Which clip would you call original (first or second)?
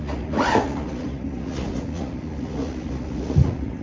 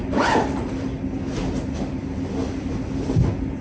second